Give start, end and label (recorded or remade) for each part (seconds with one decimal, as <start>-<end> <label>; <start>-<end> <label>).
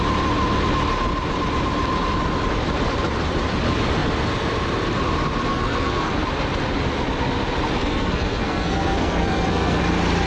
0.0-5.5 recorded; 5.5-6.1 remade; 6.1-7.8 recorded; 7.8-9.8 remade; 9.8-10.3 recorded